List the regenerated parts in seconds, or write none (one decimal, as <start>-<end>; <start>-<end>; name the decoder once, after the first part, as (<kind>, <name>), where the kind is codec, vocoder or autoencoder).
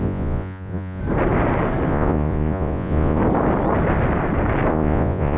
0.0-1.0 (vocoder, Vocos); 1.9-3.2; 4.7-5.4